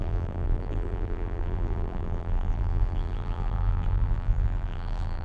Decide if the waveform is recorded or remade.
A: remade